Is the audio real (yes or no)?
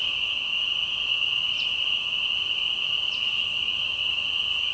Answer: yes